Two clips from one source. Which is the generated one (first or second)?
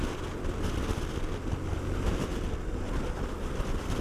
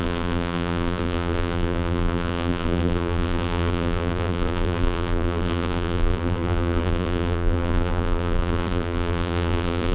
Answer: second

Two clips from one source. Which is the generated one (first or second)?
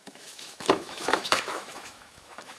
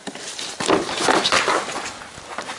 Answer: first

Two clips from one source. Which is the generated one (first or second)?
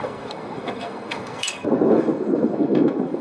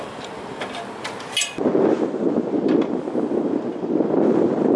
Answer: first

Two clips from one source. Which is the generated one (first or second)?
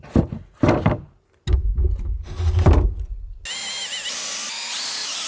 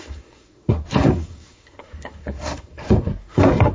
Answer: second